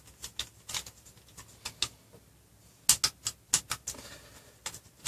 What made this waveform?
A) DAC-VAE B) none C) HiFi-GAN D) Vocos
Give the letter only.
B